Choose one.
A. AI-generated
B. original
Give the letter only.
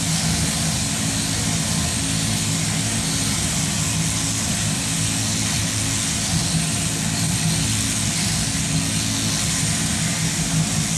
B